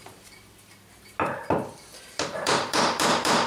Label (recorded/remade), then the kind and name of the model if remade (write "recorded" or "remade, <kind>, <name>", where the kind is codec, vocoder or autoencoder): remade, vocoder, BigVGAN v2